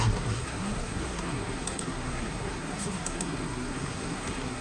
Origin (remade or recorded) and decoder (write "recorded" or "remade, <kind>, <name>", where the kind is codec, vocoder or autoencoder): remade, codec, SNAC